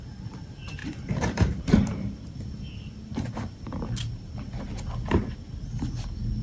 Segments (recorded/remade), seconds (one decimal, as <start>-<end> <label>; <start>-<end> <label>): 0.0-0.8 recorded; 0.8-4.6 remade; 4.6-6.4 recorded